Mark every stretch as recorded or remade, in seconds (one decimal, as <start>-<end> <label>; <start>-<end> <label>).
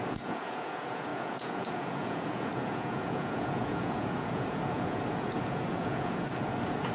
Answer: 0.0-6.9 remade